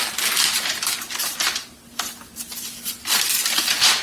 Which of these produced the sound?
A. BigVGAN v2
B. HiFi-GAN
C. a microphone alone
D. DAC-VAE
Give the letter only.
C